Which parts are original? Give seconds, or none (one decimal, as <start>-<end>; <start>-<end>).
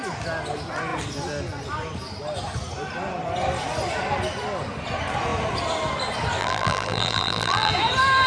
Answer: 0.0-6.4; 7.7-8.3